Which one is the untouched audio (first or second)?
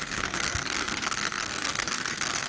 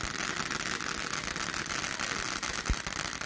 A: second